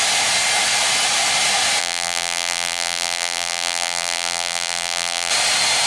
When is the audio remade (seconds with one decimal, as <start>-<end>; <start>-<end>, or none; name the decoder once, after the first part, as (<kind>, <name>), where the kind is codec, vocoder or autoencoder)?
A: 1.8-5.3 (vocoder, BigVGAN v2)

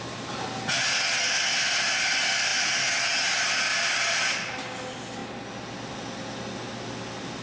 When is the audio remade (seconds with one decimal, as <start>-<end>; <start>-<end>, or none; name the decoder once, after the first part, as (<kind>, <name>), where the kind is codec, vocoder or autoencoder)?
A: 3.7-4.3 (vocoder, BigVGAN v2)

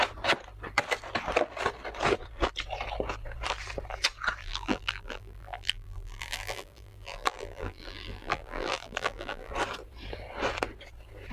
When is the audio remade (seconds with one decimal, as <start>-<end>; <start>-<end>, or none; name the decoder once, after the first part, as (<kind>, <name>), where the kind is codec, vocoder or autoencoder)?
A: 4.4-9.5 (vocoder, BigVGAN v2)

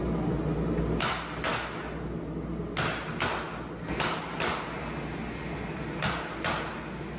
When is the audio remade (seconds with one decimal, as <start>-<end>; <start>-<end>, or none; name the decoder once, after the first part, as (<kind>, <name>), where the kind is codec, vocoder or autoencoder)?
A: none

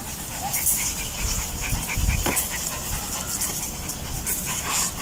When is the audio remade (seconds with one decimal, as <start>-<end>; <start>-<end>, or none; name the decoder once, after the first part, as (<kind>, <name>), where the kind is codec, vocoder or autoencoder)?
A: 0.0-1.7 (vocoder, BigVGAN v2); 4.5-5.0